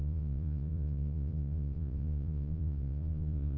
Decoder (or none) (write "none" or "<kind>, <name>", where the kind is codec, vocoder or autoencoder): vocoder, Vocos